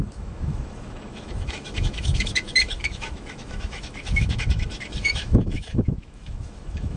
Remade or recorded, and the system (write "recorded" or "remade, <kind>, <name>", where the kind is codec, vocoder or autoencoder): remade, autoencoder, DAC-VAE